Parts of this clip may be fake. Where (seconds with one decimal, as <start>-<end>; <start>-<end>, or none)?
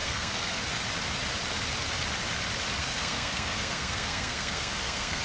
0.0-0.6; 2.8-5.2